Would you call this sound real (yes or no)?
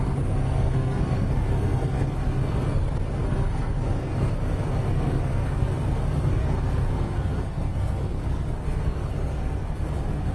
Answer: no